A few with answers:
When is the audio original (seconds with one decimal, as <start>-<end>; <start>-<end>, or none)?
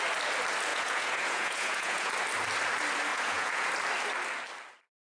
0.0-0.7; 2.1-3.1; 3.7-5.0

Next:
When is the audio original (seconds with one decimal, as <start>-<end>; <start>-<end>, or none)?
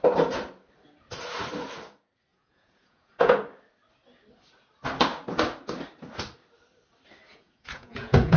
0.0-2.3; 3.4-7.3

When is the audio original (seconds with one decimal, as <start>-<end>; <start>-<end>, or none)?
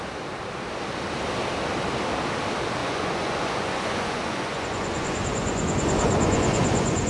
0.0-2.8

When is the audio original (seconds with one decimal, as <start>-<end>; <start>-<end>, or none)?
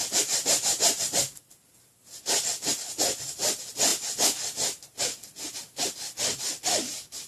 0.0-7.3